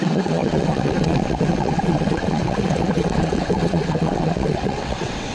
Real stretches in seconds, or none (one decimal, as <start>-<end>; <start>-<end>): none